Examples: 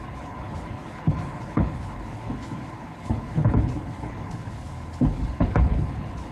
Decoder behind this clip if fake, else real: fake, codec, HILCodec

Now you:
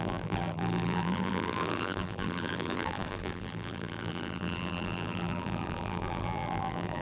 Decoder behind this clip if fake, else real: fake, vocoder, BigVGAN v2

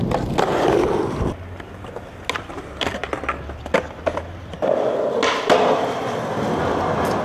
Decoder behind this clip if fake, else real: real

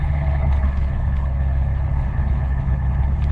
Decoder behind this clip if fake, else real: fake, codec, HILCodec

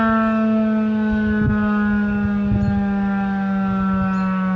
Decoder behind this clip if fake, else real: real